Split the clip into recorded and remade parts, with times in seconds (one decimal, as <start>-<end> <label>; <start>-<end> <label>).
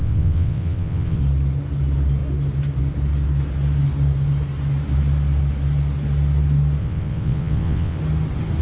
0.0-1.2 remade; 1.2-6.8 recorded; 6.8-8.0 remade; 8.0-8.6 recorded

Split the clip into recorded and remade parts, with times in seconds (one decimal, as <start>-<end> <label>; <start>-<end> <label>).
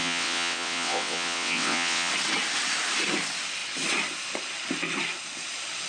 0.0-2.1 remade; 2.1-5.9 recorded